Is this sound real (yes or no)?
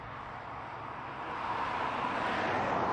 yes